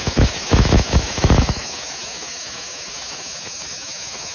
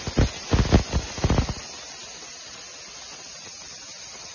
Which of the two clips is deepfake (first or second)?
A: first